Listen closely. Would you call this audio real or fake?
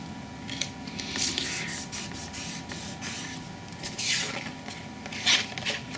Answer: real